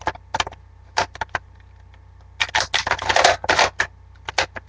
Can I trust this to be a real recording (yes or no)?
yes